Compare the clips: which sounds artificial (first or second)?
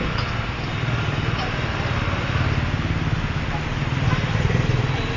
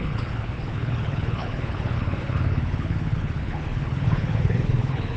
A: second